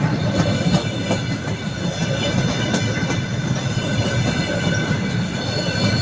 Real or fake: real